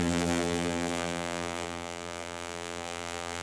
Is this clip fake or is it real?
fake